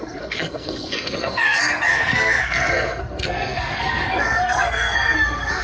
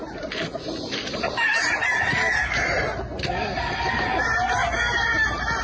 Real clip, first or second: second